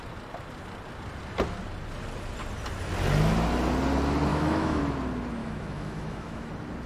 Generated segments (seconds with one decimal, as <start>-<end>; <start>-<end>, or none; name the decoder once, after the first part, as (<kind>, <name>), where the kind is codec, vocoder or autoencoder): 4.3-4.8 (autoencoder, DAC-VAE); 5.4-6.5